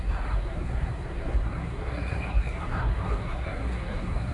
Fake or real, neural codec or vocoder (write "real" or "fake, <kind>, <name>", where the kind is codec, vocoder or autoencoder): fake, codec, SNAC